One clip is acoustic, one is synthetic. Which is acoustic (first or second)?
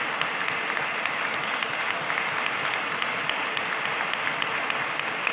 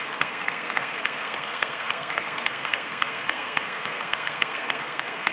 first